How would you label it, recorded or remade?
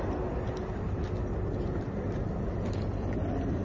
recorded